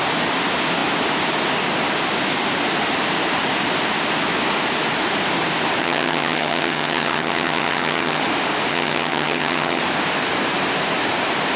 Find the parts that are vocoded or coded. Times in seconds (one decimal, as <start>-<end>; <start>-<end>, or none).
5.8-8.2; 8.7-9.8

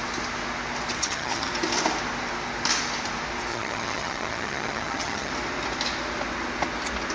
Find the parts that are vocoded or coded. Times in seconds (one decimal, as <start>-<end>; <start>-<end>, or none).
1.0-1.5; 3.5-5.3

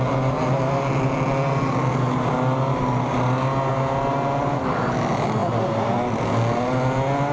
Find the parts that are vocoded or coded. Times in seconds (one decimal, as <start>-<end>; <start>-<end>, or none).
none

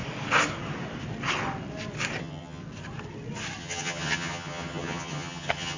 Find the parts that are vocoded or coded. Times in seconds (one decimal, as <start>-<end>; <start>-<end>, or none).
2.2-2.6; 3.6-5.8

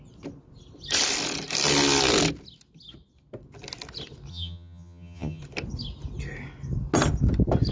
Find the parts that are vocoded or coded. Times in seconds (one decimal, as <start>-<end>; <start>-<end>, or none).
4.3-5.4

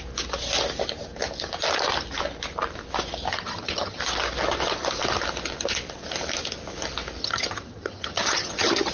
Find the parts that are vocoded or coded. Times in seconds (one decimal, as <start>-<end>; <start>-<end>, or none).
3.3-4.0; 7.2-8.9

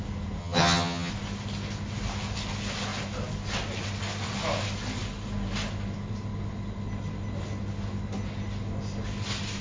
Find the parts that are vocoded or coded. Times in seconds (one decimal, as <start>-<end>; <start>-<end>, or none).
0.4-1.1

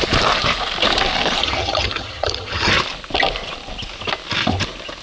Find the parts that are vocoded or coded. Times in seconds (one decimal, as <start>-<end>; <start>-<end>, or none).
1.4-2.7